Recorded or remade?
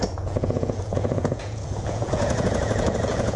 remade